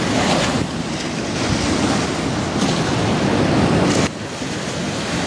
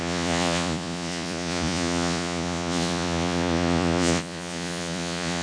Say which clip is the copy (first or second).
second